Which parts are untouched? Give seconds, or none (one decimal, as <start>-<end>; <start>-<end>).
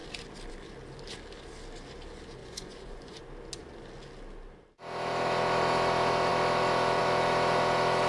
0.0-2.4; 3.2-8.1